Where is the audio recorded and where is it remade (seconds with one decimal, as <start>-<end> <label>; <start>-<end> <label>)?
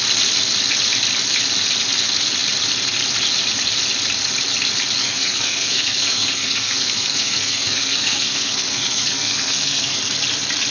0.0-5.0 recorded; 5.0-10.0 remade; 10.0-10.7 recorded